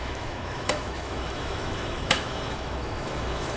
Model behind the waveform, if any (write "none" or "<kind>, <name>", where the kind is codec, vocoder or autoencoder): autoencoder, DAC-VAE